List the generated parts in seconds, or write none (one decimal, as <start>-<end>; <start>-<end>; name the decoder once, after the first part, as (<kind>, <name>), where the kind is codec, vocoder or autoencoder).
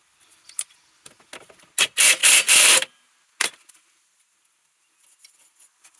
none